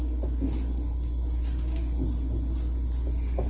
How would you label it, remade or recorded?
recorded